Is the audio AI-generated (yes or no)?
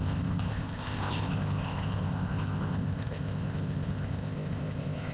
yes